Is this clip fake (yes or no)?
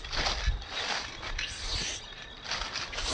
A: no